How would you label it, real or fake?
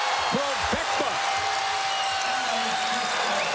real